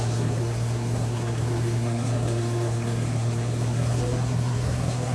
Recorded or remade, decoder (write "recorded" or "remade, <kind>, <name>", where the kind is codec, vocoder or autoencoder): remade, codec, SNAC